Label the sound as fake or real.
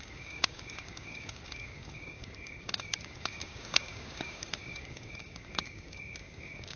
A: fake